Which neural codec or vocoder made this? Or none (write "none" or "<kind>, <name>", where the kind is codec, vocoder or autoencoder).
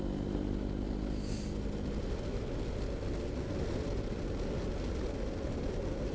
none